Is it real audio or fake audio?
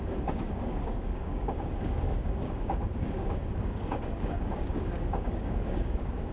fake